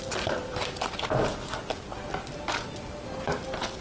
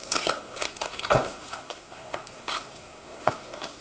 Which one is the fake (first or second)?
second